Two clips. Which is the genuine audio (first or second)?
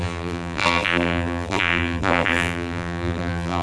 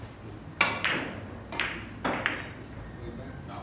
second